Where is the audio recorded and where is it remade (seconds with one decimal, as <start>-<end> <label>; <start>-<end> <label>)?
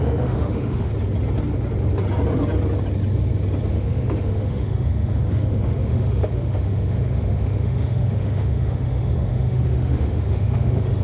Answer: 0.0-0.9 remade; 0.9-3.7 recorded; 3.7-11.0 remade